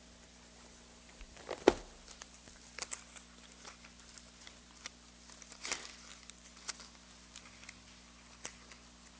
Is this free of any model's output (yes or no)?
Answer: yes